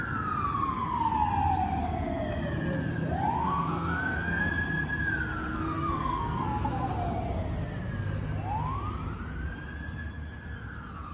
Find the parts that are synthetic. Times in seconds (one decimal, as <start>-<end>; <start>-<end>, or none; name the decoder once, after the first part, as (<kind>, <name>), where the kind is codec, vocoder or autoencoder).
3.4-4.5 (codec, SNAC); 5.5-6.9